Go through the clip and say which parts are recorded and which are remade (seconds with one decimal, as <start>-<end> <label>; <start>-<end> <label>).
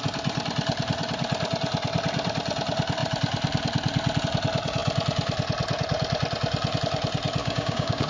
0.0-7.4 recorded; 7.4-8.1 remade